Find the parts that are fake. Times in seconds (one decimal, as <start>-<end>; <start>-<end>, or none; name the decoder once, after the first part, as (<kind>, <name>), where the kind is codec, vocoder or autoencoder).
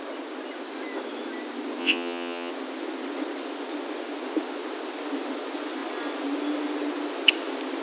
1.8-2.5 (vocoder, WaveNeXt)